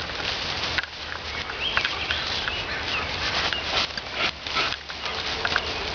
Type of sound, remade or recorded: recorded